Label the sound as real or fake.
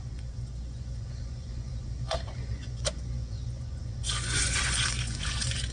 fake